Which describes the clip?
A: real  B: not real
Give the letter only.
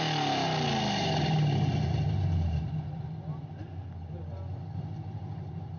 A